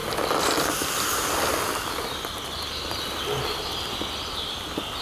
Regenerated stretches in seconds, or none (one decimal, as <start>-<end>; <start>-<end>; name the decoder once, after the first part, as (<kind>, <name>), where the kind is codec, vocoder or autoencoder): none